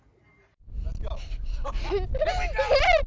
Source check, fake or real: real